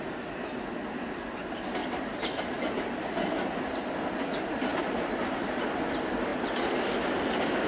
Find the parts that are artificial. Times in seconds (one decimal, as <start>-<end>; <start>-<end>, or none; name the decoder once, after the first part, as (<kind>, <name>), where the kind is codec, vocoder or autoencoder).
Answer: 1.8-3.1 (vocoder, BigVGAN v2); 4.7-5.6